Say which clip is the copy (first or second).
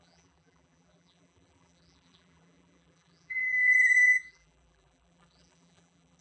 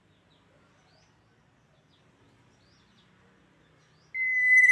first